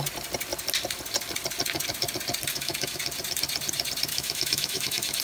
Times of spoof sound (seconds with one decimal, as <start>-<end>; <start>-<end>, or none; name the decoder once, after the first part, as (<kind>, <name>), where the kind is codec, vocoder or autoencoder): 2.5-3.0 (autoencoder, DAC-VAE); 4.1-5.2